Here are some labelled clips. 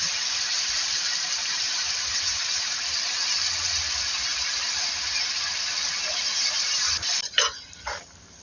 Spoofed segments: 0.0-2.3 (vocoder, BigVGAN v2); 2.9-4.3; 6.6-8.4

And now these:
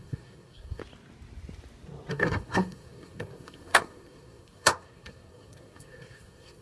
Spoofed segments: 0.0-0.8 (codec, SNAC); 2.1-6.6

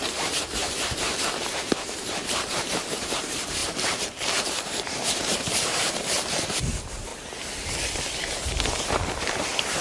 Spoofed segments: 0.0-0.6 (vocoder, BigVGAN v2); 1.9-7.1; 8.9-9.8

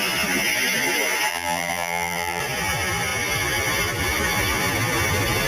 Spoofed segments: 1.3-2.4 (vocoder, BigVGAN v2)

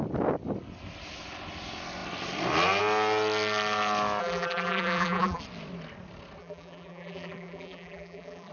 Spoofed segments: 4.2-5.4 (vocoder, BigVGAN v2); 6.4-8.5

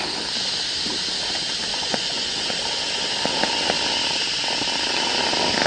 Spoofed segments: 1.7-2.5 (vocoder, Vocos)

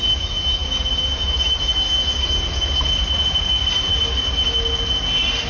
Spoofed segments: none